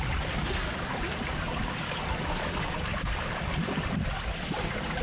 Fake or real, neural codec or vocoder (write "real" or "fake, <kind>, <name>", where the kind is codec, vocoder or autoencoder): real